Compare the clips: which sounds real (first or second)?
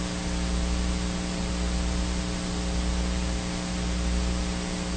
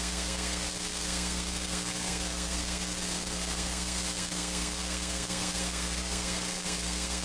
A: first